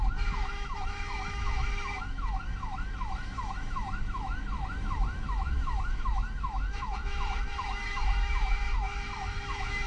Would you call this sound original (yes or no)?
no